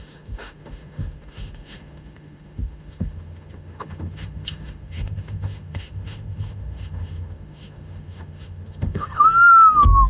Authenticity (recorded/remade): remade